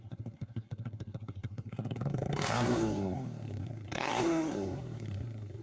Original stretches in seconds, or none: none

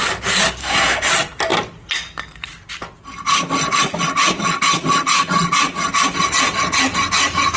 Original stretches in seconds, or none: 0.0-0.6; 1.1-7.6